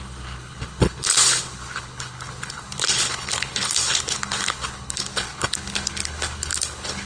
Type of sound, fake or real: fake